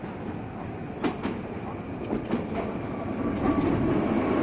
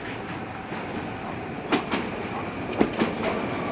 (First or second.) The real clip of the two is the first